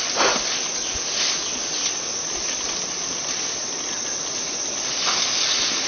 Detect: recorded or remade recorded